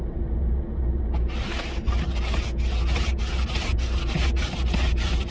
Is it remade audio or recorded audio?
recorded